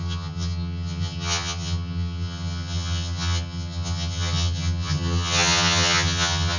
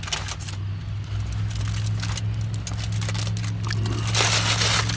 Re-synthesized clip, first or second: first